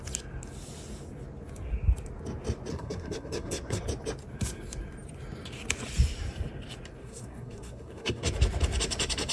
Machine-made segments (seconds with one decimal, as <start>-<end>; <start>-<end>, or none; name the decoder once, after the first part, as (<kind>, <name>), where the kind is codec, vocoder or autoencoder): 2.7-3.8 (codec, SNAC); 7.0-8.3